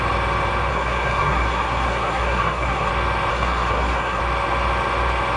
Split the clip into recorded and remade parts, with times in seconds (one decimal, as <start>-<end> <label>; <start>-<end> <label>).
0.0-0.7 recorded; 0.7-2.9 remade; 2.9-3.3 recorded; 3.3-4.2 remade; 4.2-5.4 recorded